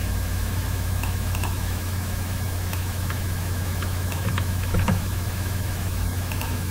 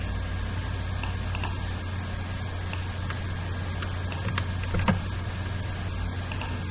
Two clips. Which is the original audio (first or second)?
second